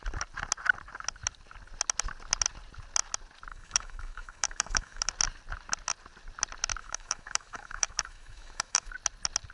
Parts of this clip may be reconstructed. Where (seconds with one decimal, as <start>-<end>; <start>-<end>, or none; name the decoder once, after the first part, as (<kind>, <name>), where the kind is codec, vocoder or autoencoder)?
3.5-5.1 (autoencoder, DAC-VAE); 6.8-8.9